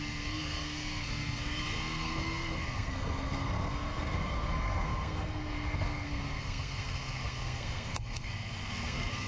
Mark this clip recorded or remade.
remade